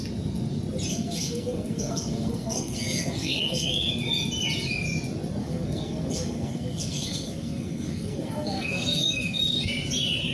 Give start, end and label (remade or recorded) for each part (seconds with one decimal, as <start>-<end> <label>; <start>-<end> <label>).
0.0-0.9 recorded; 0.9-3.9 remade; 3.9-5.4 recorded; 5.4-9.4 remade; 9.4-10.3 recorded